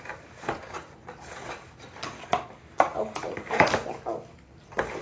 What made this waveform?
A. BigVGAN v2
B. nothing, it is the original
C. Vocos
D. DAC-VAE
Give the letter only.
A